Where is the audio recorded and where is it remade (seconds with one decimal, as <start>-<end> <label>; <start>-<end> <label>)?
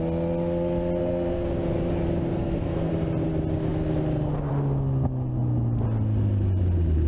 0.0-1.0 recorded; 1.0-1.5 remade; 1.5-2.3 recorded; 2.3-2.9 remade; 2.9-7.1 recorded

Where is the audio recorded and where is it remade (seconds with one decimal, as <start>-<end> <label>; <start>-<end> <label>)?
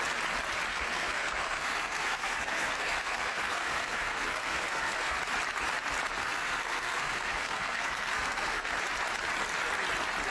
0.0-0.7 recorded; 0.7-5.2 remade; 5.2-6.2 recorded; 6.2-8.7 remade; 8.7-10.3 recorded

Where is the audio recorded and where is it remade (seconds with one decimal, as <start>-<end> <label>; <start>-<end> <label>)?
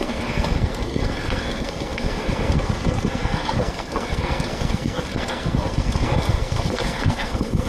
0.0-7.7 remade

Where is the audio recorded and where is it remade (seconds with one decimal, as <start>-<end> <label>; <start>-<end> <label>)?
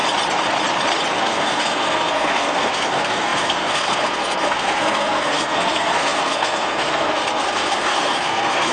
0.0-1.2 recorded; 1.2-8.7 remade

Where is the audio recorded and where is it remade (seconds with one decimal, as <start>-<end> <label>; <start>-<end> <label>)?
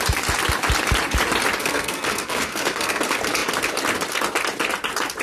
0.0-1.6 recorded; 1.6-3.0 remade; 3.0-5.2 recorded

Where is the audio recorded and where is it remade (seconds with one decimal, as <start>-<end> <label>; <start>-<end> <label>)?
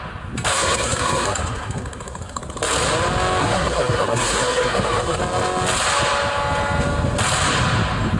0.0-0.5 recorded; 0.5-2.4 remade; 2.4-3.4 recorded; 3.4-5.2 remade; 5.2-8.2 recorded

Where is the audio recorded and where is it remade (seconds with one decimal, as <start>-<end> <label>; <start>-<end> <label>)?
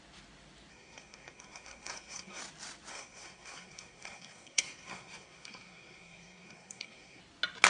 0.0-0.7 recorded; 0.7-2.4 remade; 2.4-2.9 recorded; 2.9-7.2 remade; 7.2-7.7 recorded